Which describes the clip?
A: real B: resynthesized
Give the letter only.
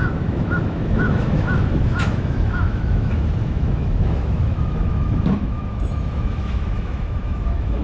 B